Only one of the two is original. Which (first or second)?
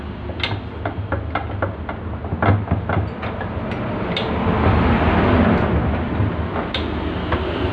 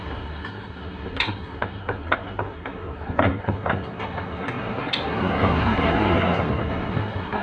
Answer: first